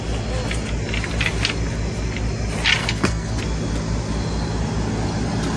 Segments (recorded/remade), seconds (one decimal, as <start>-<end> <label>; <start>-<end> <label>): 0.0-2.8 recorded; 2.8-3.4 remade; 3.4-5.6 recorded